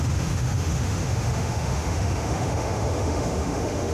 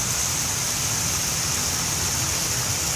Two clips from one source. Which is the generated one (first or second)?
first